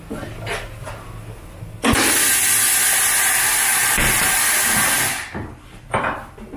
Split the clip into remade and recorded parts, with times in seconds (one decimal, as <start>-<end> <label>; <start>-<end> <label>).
0.0-3.8 recorded; 3.8-6.6 remade